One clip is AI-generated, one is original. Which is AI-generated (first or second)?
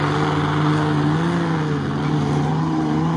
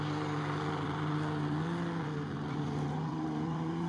second